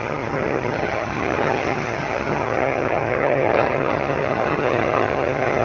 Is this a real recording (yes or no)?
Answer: no